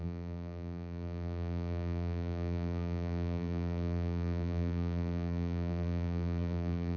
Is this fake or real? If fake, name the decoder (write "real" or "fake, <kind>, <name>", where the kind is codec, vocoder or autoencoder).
fake, vocoder, BigVGAN v2